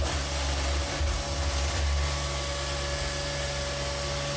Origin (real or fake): real